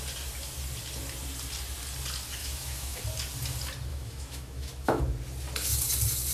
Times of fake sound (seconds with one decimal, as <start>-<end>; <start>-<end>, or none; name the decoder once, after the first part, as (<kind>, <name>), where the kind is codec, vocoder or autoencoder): 2.4-3.0 (autoencoder, DAC-VAE); 3.9-5.0